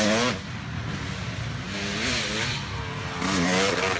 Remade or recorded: recorded